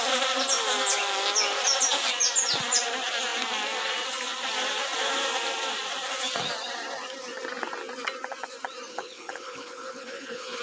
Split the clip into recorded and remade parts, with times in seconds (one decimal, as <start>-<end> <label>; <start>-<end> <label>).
0.0-8.9 recorded; 8.9-10.6 remade